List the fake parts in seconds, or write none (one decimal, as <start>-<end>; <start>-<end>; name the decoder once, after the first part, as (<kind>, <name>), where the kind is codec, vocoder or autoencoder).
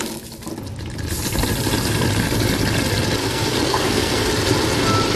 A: 3.2-4.3 (codec, SNAC)